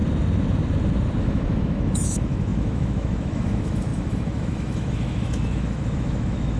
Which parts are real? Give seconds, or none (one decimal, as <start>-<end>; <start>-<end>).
0.0-1.2